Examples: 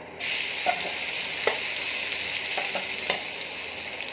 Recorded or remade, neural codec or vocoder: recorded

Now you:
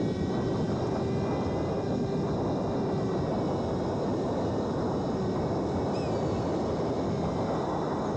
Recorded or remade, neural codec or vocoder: recorded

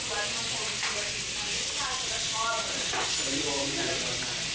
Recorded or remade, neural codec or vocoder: recorded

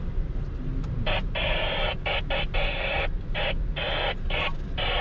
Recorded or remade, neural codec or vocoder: recorded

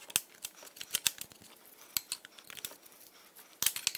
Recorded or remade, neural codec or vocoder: recorded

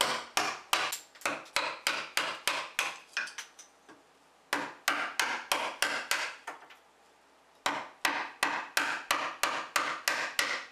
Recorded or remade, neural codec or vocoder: recorded